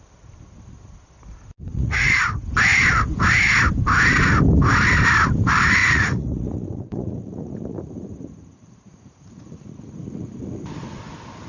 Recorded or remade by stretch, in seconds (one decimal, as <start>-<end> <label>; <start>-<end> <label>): 0.0-1.7 recorded; 1.7-2.2 remade; 2.2-5.8 recorded; 5.8-11.0 remade; 11.0-11.5 recorded